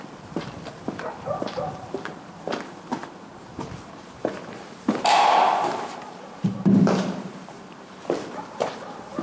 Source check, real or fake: fake